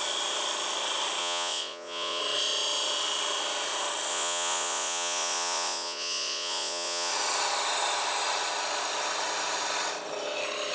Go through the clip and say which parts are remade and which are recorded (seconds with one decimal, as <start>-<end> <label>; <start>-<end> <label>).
0.0-1.2 recorded; 1.2-2.2 remade; 2.2-4.1 recorded; 4.1-7.1 remade; 7.1-10.7 recorded